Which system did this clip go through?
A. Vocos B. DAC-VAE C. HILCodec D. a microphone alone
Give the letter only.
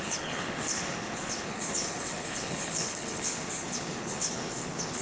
C